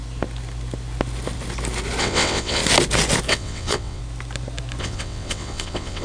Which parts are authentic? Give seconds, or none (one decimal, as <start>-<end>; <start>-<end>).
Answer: 0.0-2.0; 2.6-3.3; 4.0-4.8